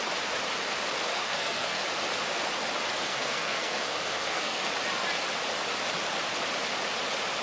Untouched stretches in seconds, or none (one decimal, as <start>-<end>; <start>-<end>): 0.0-1.1; 1.8-3.0; 4.7-7.4